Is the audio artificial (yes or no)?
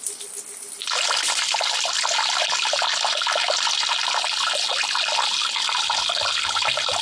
no